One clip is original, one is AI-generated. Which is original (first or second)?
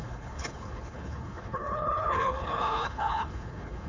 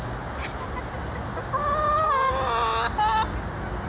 second